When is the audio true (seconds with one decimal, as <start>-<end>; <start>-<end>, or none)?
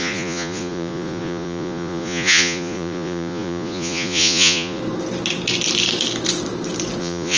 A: 4.8-7.0